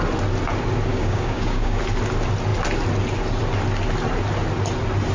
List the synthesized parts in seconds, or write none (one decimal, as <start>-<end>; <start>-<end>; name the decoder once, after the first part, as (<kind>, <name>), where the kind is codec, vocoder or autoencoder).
0.9-1.8 (codec, DAC)